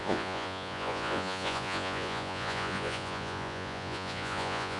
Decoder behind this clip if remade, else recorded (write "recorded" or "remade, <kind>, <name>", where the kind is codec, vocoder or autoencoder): remade, vocoder, Vocos